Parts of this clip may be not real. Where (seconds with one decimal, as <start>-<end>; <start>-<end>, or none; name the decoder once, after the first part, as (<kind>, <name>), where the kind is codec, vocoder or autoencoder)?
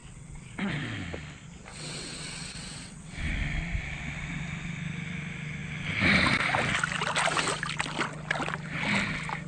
0.0-0.6 (vocoder, WaveNeXt); 1.7-3.3